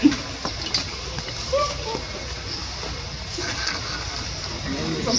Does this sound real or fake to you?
real